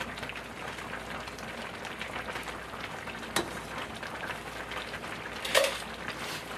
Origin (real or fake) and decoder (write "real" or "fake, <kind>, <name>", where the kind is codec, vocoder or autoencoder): real